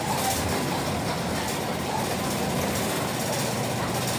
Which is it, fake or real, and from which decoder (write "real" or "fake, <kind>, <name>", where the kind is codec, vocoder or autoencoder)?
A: real